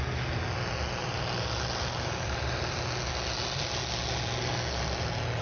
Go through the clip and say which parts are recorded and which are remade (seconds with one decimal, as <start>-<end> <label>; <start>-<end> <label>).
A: 0.0-1.0 recorded; 1.0-2.8 remade; 2.8-5.4 recorded